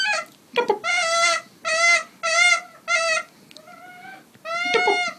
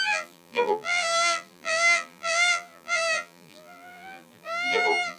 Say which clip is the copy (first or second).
second